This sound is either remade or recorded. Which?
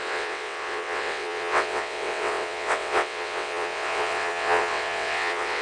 remade